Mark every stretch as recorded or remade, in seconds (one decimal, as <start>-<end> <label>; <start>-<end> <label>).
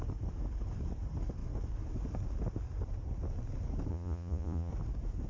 0.0-3.9 recorded; 3.9-4.7 remade; 4.7-5.3 recorded